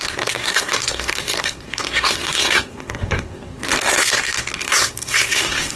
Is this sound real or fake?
fake